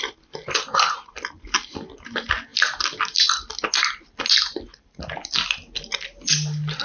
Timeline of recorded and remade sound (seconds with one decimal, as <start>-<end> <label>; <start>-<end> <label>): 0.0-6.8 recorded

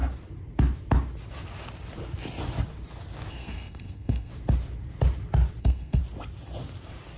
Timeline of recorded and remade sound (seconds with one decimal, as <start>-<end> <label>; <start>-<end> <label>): 0.0-3.3 recorded; 3.3-4.3 remade; 4.3-5.6 recorded; 5.6-6.0 remade; 6.0-7.2 recorded

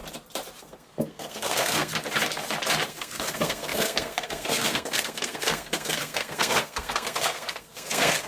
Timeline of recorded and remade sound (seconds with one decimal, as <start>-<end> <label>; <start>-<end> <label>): 0.0-0.6 recorded; 0.6-1.9 remade; 1.9-2.9 recorded; 2.9-8.3 remade

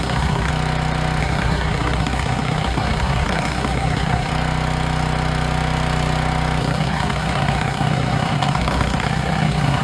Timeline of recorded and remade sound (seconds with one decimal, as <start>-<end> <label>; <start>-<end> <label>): 0.0-0.5 remade; 0.5-1.2 recorded; 1.2-4.3 remade; 4.3-6.6 recorded; 6.6-9.8 remade

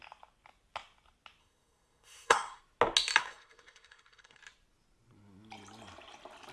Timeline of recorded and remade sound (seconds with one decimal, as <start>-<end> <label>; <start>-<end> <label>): 0.0-1.4 recorded; 1.4-2.6 remade; 2.6-3.2 recorded; 3.2-4.4 remade; 4.4-6.5 recorded

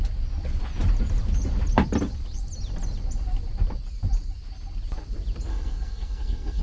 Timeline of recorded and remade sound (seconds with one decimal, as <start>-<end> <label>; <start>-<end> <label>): 0.0-5.5 recorded; 5.5-6.6 remade

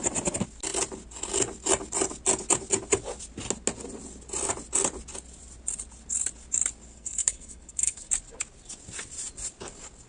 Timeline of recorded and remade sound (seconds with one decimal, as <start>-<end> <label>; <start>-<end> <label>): 0.0-6.9 recorded; 6.9-8.1 remade; 8.1-10.1 recorded

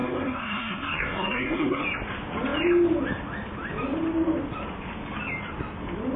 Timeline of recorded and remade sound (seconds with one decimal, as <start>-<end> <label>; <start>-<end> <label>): 0.0-1.8 remade; 1.8-6.2 recorded